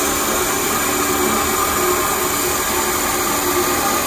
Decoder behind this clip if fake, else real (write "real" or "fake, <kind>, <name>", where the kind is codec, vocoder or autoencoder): real